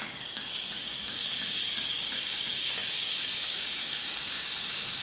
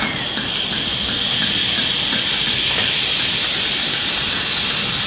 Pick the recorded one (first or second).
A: second